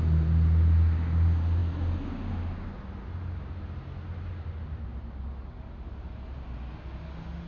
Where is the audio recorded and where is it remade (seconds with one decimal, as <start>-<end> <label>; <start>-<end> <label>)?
0.0-7.5 recorded